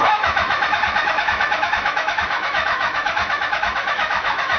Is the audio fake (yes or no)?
yes